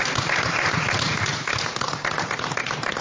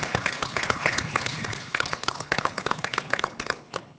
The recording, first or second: first